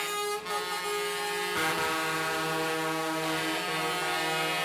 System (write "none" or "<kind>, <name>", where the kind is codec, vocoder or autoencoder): none